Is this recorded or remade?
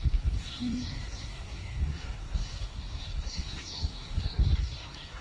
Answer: remade